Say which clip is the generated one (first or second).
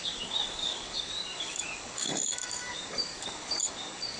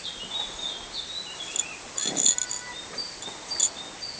first